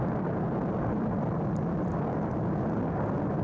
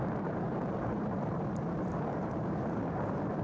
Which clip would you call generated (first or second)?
second